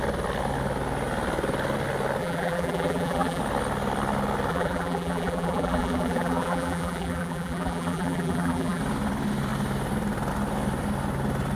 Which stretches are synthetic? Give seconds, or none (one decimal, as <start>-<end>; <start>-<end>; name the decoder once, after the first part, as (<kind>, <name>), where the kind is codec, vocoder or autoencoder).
2.2-3.4 (vocoder, BigVGAN v2); 4.5-8.8